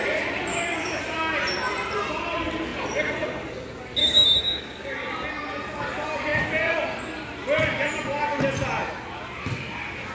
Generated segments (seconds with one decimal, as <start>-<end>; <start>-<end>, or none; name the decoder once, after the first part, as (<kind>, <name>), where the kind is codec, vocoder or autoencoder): 0.5-1.0 (codec, DAC); 4.0-4.9

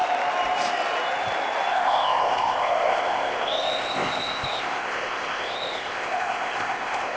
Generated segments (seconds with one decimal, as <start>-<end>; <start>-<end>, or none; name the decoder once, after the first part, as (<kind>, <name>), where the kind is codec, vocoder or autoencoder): 1.7-7.2 (codec, ZipCodec)

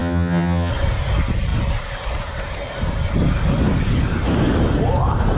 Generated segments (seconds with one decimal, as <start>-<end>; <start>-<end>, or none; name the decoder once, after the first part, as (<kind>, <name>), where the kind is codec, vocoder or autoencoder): 0.0-0.7 (vocoder, HiFi-GAN)

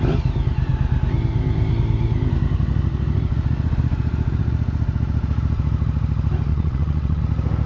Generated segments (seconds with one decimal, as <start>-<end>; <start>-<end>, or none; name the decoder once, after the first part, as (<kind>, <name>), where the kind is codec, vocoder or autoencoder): 6.5-7.2 (vocoder, WaveNeXt)

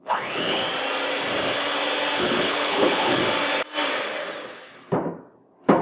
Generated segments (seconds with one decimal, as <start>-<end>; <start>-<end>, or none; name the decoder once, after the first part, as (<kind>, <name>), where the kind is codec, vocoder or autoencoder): 0.0-0.6 (codec, HILCodec); 2.2-3.2

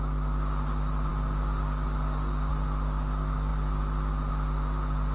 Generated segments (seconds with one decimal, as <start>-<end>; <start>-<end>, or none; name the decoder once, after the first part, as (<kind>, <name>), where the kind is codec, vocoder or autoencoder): none

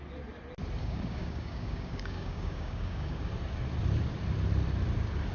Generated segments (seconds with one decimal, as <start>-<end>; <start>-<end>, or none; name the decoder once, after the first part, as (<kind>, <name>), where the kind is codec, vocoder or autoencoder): 0.8-3.3 (codec, DAC)